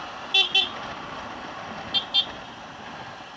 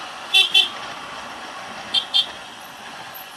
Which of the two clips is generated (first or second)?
second